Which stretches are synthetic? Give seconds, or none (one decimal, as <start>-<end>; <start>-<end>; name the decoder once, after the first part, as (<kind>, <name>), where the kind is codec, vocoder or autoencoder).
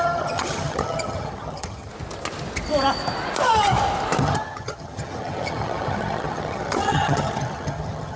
0.0-1.9 (vocoder, HiFi-GAN); 4.2-8.2